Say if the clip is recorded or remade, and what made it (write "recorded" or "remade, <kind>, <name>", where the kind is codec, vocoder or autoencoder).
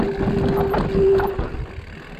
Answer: recorded